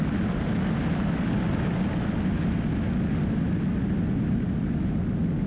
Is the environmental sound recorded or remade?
recorded